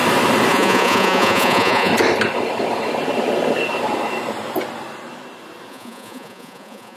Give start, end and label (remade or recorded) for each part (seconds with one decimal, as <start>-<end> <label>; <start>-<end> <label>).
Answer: 0.0-0.5 recorded; 0.5-1.9 remade; 1.9-5.7 recorded; 5.7-7.0 remade